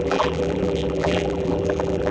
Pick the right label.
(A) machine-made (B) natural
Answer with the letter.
A